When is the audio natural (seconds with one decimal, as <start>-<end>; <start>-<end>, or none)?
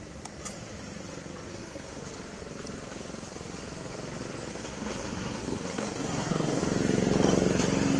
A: 0.0-1.5; 2.0-4.5; 6.6-8.0